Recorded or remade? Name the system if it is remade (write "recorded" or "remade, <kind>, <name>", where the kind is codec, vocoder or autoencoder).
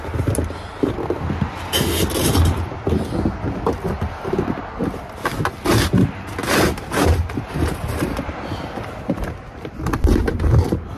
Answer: recorded